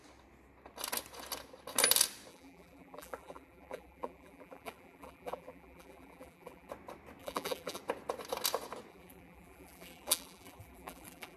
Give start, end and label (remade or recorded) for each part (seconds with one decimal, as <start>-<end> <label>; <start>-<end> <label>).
0.0-2.3 recorded; 2.3-6.7 remade; 6.7-7.2 recorded; 7.2-7.8 remade; 7.8-8.9 recorded; 8.9-11.4 remade